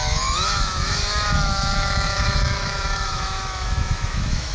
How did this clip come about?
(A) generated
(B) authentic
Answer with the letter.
A